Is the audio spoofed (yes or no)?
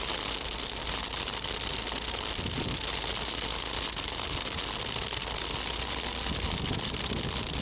no